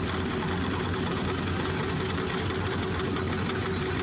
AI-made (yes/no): no